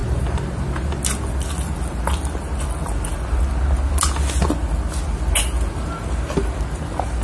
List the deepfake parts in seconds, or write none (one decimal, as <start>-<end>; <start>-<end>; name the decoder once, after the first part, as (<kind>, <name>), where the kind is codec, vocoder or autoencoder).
none